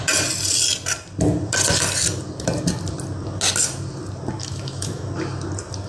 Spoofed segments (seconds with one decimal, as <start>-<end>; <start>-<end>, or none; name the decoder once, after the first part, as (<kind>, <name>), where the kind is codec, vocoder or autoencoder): 4.4-5.1 (autoencoder, DAC-VAE)